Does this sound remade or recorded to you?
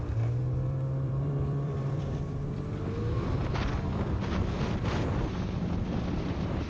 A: remade